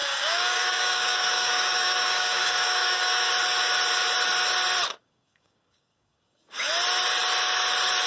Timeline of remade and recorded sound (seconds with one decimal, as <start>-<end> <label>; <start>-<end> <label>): 0.0-3.3 remade; 3.3-5.0 recorded; 5.0-6.7 remade; 6.7-8.1 recorded